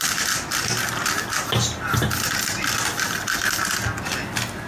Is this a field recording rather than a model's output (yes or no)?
yes